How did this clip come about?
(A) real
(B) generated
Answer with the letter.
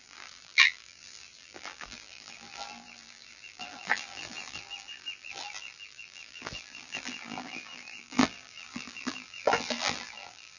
B